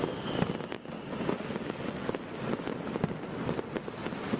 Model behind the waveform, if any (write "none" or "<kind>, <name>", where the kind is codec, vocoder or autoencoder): none